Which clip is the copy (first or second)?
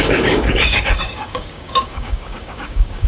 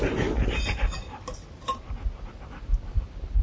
first